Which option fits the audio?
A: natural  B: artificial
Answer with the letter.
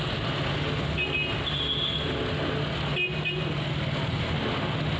A